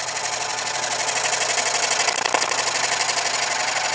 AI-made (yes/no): no